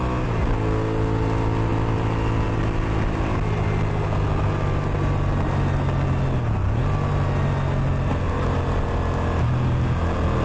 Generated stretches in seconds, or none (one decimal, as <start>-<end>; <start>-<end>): none